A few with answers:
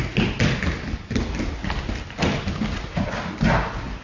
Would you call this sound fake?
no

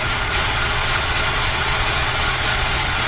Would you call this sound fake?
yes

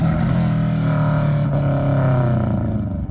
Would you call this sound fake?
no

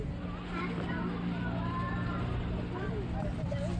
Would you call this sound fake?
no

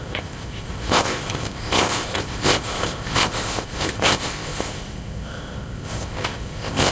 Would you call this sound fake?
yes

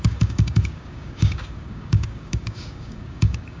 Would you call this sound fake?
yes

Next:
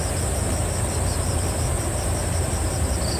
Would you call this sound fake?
no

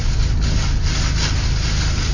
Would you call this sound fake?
no